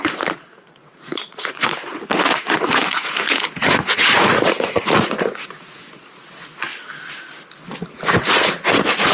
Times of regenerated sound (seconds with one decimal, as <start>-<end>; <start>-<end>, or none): 0.0-6.7; 8.2-9.1